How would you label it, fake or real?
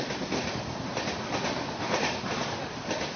fake